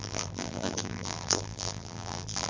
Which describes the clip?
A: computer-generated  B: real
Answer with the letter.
A